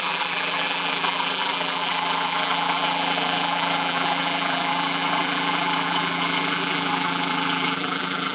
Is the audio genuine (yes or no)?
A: no